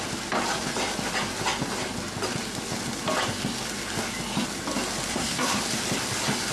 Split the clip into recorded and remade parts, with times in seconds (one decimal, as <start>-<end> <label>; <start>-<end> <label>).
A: 0.0-5.1 recorded; 5.1-5.6 remade; 5.6-6.5 recorded